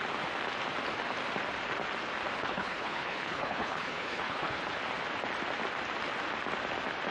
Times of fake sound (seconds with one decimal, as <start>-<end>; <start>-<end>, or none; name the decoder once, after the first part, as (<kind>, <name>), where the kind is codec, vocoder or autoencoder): 2.4-4.6 (codec, HILCodec)